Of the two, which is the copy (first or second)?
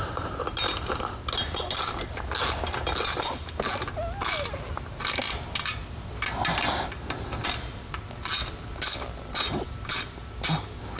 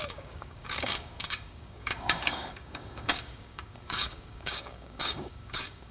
second